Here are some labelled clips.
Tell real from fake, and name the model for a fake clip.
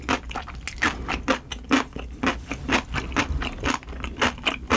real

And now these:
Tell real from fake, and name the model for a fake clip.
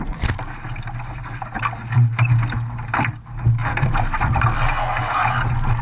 real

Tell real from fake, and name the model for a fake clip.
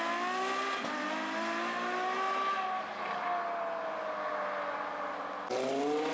real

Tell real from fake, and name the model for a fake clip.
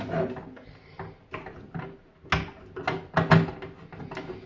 real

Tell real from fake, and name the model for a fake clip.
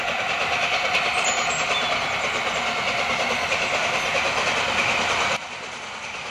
real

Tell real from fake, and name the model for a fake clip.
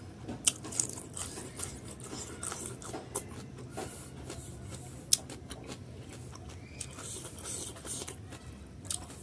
real